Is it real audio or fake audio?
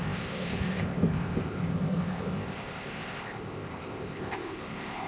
fake